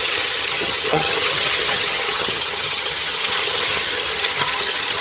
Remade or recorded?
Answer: remade